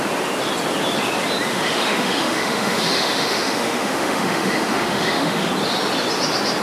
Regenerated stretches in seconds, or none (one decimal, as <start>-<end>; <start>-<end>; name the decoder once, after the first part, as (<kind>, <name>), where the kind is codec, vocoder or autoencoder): 1.5-5.5 (autoencoder, DAC-VAE)